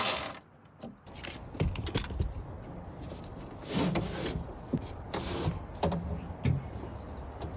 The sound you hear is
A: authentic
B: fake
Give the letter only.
A